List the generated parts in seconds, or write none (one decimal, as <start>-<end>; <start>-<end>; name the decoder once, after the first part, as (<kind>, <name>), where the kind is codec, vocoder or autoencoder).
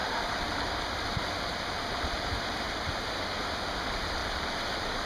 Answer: 0.0-3.1 (vocoder, BigVGAN v2); 4.2-5.1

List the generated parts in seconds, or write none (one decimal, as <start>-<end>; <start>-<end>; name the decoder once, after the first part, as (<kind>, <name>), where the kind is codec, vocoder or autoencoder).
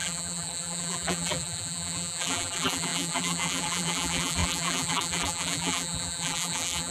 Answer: 0.0-6.9 (vocoder, BigVGAN v2)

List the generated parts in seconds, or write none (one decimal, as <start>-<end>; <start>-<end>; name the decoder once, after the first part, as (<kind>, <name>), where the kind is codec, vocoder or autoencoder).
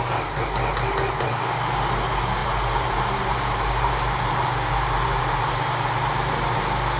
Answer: 2.4-6.6 (vocoder, BigVGAN v2)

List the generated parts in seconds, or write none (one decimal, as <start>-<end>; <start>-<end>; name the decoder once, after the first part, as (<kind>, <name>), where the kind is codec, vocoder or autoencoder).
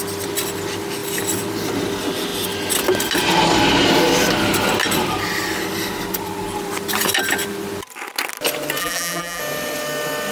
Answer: 8.8-9.4 (vocoder, BigVGAN v2)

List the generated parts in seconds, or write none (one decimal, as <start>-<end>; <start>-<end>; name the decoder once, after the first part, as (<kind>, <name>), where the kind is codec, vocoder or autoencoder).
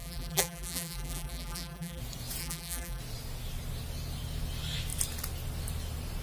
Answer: 0.0-2.0 (vocoder, BigVGAN v2); 2.4-3.0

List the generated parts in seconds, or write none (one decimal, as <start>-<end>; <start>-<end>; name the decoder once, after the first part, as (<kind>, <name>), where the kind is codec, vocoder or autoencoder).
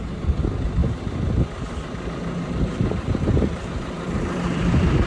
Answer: 0.0-0.8 (vocoder, BigVGAN v2); 3.0-5.1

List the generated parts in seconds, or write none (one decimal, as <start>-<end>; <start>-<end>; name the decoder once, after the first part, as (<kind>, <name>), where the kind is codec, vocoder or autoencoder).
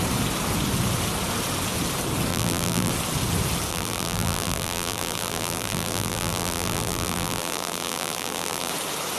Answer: 2.3-2.9 (vocoder, BigVGAN v2); 3.7-8.7